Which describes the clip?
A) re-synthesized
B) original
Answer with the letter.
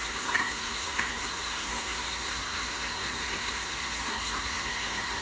A